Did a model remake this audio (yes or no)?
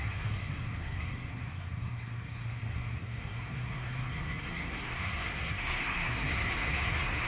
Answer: yes